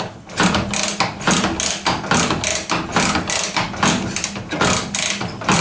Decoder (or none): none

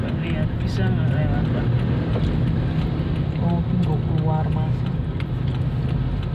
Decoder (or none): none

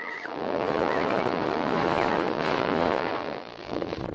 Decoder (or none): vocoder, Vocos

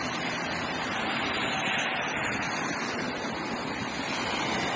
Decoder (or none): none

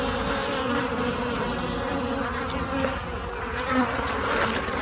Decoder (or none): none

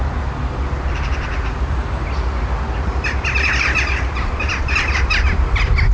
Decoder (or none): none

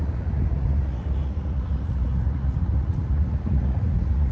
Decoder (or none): vocoder, Vocos